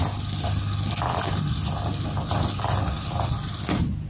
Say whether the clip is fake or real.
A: real